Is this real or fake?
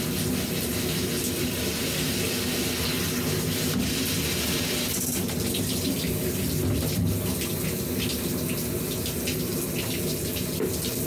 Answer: real